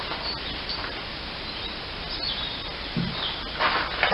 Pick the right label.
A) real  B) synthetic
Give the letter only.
A